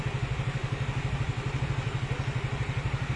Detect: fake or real real